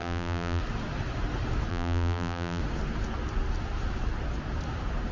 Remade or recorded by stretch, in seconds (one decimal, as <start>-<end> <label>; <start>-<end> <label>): 0.0-0.6 remade; 0.6-1.7 recorded; 1.7-2.6 remade; 2.6-5.1 recorded